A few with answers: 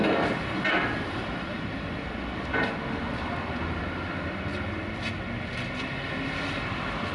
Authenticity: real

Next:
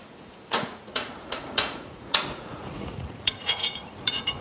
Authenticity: fake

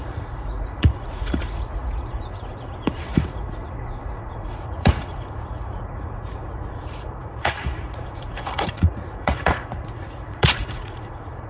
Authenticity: fake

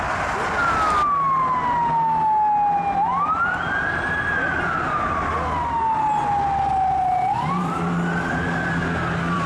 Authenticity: real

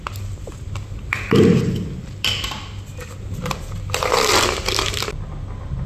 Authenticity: real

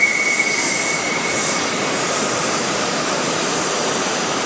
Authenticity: fake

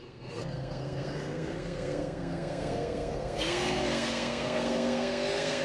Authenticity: fake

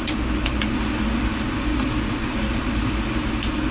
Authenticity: real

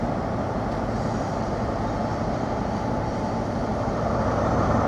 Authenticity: fake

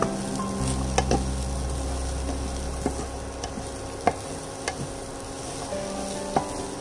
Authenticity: real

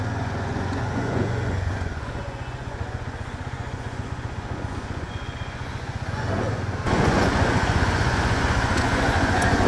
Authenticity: fake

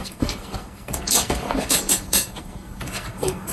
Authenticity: fake